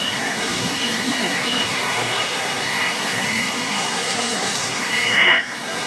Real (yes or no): no